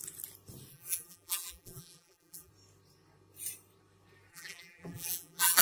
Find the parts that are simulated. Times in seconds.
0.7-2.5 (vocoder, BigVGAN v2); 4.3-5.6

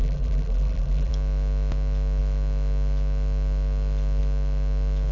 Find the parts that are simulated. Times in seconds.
0.0-1.1 (vocoder, BigVGAN v2)

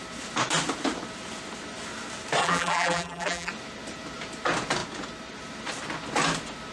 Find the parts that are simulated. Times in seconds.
2.4-3.5 (vocoder, BigVGAN v2)

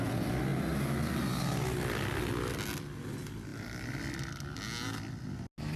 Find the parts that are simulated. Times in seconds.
none